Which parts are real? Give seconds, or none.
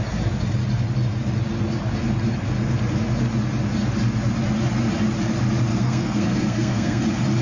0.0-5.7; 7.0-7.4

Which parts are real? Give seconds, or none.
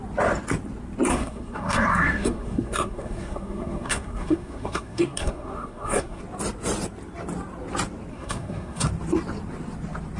0.0-1.1; 6.2-8.1; 8.9-10.2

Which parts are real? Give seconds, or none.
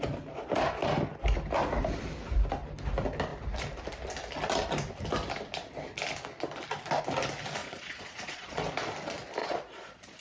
0.0-7.6; 8.7-9.4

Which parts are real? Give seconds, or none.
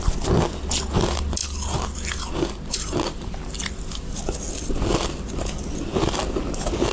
0.0-6.9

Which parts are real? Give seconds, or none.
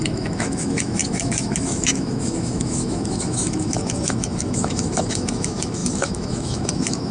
none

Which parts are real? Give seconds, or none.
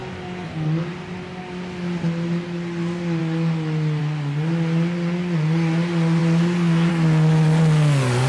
0.0-8.3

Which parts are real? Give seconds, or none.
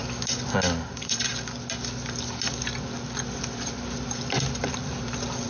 0.0-0.9; 1.3-4.6